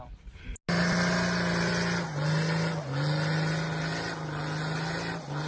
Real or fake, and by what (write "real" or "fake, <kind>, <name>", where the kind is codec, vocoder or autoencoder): real